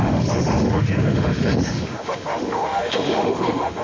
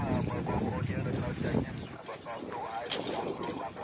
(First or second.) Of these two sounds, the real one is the second